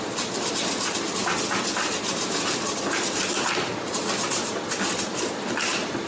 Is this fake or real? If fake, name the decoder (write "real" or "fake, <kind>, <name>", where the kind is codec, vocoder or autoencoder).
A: real